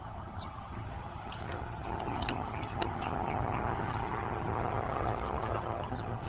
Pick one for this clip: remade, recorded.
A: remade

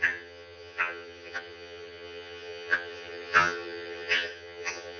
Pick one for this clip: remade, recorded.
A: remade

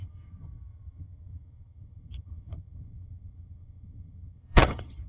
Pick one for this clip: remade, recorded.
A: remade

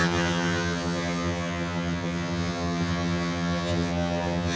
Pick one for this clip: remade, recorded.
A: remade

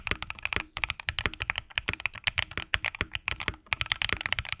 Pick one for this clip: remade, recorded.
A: recorded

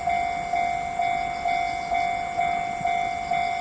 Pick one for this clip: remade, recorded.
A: recorded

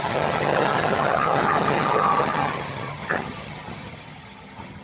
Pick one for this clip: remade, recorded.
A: remade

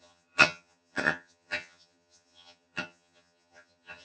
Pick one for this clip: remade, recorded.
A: remade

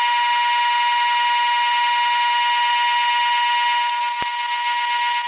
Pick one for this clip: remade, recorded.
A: recorded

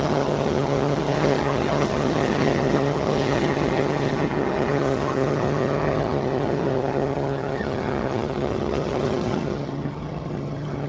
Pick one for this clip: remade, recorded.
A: remade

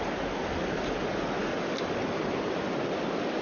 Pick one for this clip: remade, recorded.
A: recorded